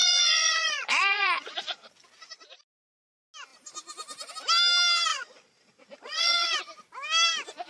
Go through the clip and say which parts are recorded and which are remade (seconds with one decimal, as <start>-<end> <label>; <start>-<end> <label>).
0.0-1.9 remade; 1.9-5.1 recorded; 5.1-6.6 remade; 6.6-7.7 recorded